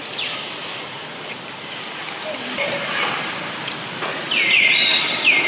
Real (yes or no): yes